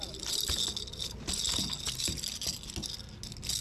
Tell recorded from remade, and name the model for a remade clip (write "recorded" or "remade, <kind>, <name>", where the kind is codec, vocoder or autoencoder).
recorded